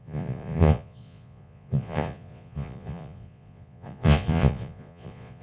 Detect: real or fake fake